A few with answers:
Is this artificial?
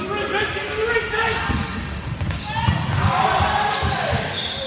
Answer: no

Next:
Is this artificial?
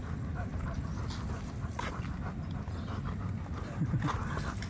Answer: no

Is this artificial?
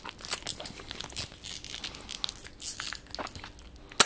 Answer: no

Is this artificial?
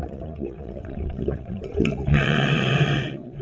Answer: yes